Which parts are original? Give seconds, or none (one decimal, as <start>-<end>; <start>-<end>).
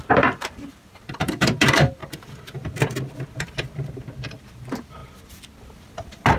2.0-4.4; 5.0-6.4